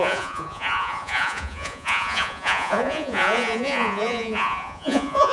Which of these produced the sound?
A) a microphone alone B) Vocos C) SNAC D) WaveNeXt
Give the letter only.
B